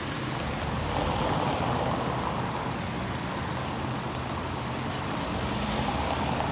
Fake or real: real